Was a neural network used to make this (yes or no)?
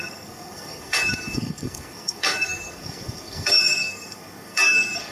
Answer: yes